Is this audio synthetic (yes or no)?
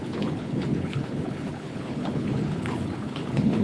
yes